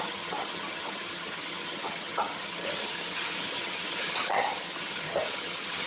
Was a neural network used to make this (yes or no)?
yes